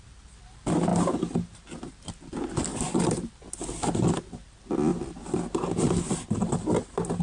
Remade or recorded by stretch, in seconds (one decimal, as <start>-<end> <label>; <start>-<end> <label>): 0.0-0.9 recorded; 0.9-1.7 remade; 1.7-2.7 recorded; 2.7-4.2 remade; 4.2-4.9 recorded; 4.9-6.6 remade; 6.6-7.2 recorded